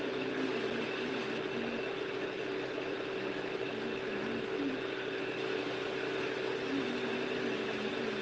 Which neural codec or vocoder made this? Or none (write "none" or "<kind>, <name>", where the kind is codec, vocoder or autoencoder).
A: none